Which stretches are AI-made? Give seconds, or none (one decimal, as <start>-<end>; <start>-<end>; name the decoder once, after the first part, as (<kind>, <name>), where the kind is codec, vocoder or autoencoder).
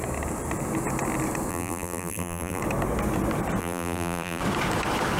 1.5-2.6 (vocoder, BigVGAN v2); 3.6-4.4